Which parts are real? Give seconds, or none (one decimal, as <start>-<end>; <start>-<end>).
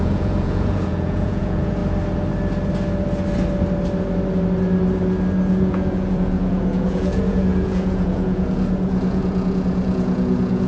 1.8-5.5